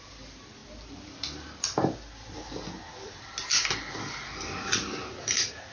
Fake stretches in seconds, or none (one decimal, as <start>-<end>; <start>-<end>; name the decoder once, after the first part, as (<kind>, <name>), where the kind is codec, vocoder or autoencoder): none